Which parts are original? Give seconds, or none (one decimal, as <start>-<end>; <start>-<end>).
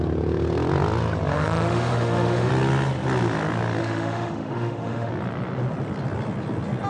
0.0-1.3; 2.5-3.8; 5.1-6.9